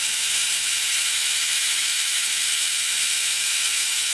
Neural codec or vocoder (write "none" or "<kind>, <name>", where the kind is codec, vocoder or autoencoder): autoencoder, DAC-VAE